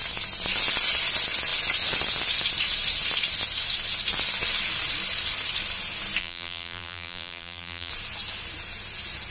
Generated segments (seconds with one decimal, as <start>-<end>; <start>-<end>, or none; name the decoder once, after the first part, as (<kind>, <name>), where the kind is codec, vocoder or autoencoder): 6.2-7.9 (vocoder, BigVGAN v2)